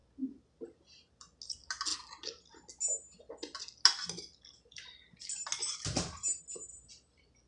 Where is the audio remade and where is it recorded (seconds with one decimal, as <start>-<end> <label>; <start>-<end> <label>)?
0.0-7.5 recorded